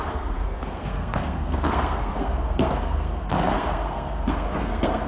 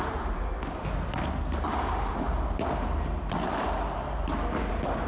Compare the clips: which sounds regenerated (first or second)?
first